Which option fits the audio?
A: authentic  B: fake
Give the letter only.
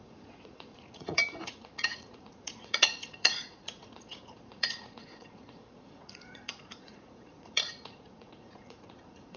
B